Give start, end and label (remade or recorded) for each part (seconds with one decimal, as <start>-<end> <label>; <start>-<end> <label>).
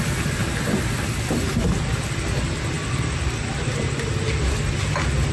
0.0-5.3 recorded